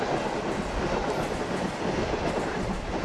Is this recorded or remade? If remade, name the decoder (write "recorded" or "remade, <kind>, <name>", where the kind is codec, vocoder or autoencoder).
recorded